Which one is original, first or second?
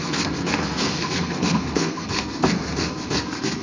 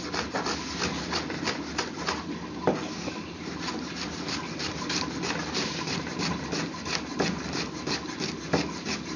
second